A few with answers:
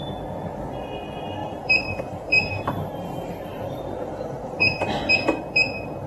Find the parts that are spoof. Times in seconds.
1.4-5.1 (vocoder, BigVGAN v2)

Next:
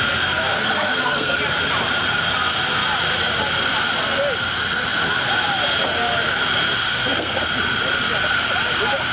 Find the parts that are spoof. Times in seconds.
0.5-1.4 (codec, SNAC); 6.9-7.4

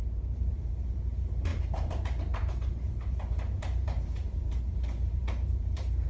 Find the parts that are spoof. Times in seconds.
0.0-1.0 (vocoder, BigVGAN v2); 1.5-4.6; 5.2-6.1

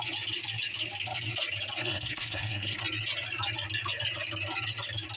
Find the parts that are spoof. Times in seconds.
1.8-2.8 (codec, SNAC)